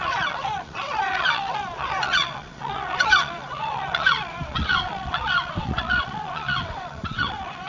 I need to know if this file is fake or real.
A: fake